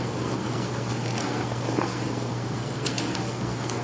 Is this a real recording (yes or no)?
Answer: no